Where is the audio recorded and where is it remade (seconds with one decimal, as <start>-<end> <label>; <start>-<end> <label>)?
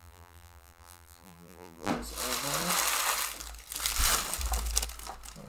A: 0.0-1.9 remade; 1.9-5.5 recorded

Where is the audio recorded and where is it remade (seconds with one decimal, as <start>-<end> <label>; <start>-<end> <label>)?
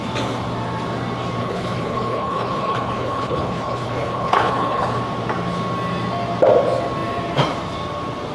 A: 0.0-1.4 recorded; 1.4-5.0 remade; 5.0-8.3 recorded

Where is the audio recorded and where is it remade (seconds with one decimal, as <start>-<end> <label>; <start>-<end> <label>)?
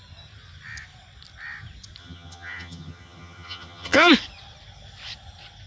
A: 0.0-2.0 recorded; 2.0-4.1 remade; 4.1-5.7 recorded